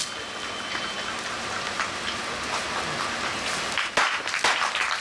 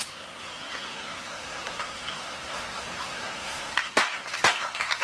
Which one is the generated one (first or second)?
second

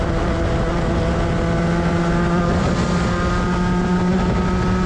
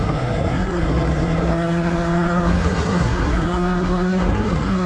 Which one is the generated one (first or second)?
second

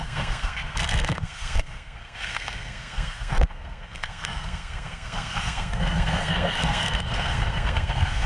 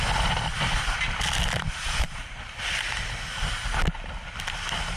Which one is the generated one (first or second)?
first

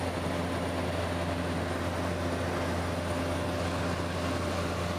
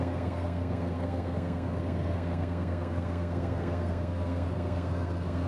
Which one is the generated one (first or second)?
second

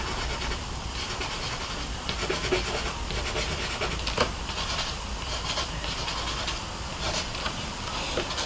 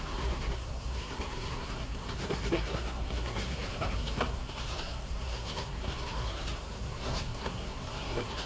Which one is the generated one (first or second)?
second